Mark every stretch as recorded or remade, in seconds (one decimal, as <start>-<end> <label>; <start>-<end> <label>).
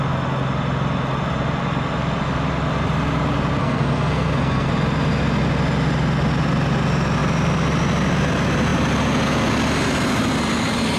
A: 0.0-3.6 recorded; 3.6-4.7 remade; 4.7-11.0 recorded